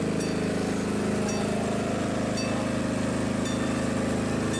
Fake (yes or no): no